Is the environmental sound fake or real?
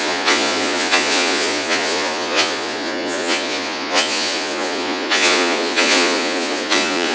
fake